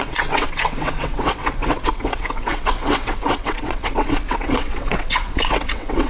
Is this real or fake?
fake